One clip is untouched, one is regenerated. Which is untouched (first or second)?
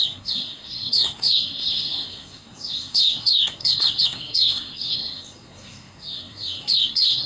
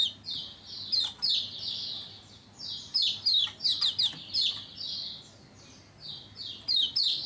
second